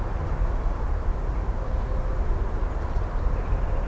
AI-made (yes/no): no